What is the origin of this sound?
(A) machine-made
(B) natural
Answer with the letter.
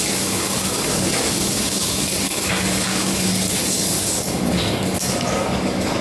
A